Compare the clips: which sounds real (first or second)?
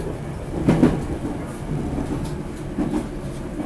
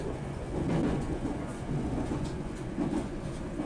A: first